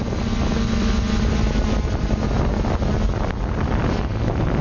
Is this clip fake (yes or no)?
no